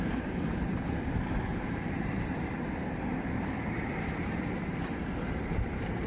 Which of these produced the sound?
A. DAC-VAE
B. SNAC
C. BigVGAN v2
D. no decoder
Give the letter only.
C